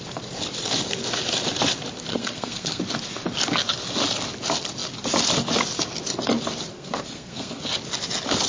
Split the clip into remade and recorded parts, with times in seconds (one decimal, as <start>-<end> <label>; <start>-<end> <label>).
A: 0.0-2.1 recorded; 2.1-2.8 remade; 2.8-6.7 recorded; 6.7-7.6 remade; 7.6-8.5 recorded